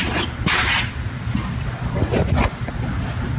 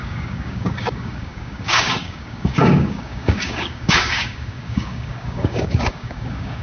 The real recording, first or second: first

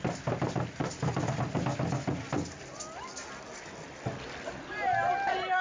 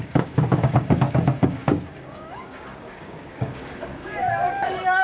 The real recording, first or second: first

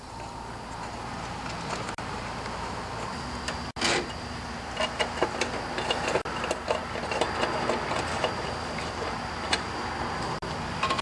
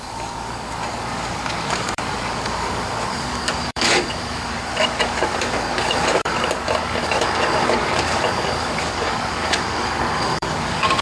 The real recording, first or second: first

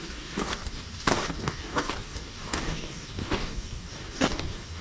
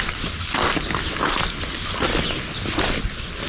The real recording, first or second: second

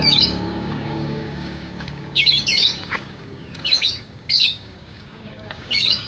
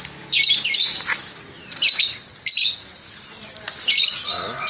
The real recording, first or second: second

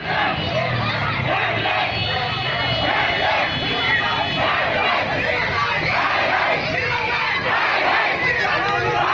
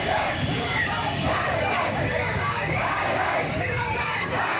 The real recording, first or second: first